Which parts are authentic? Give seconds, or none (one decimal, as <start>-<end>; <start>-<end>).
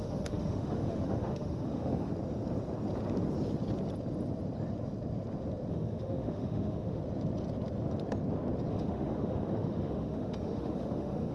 2.1-5.7; 7.0-8.7